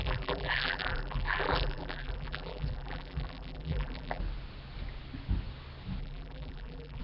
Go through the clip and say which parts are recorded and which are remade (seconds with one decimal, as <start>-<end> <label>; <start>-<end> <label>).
0.0-4.2 remade; 4.2-6.0 recorded; 6.0-7.0 remade

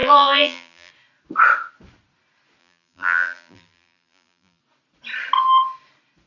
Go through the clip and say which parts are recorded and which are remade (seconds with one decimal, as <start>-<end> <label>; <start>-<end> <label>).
0.0-0.9 remade; 0.9-2.6 recorded; 2.6-4.6 remade; 4.6-6.3 recorded